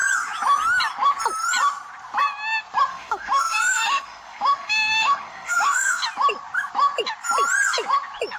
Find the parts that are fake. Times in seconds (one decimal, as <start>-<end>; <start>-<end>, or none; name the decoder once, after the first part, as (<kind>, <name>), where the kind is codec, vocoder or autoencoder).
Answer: 2.9-6.0 (autoencoder, DAC-VAE)